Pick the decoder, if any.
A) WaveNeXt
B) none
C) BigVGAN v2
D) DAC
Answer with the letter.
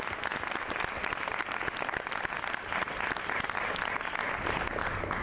B